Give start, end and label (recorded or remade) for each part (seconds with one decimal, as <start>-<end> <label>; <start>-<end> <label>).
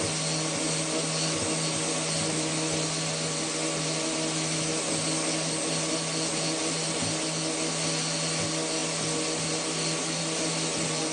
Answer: 0.0-11.1 recorded